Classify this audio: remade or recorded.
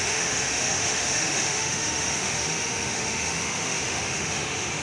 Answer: remade